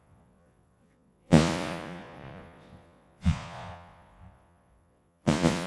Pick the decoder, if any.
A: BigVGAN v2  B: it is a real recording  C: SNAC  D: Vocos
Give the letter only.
D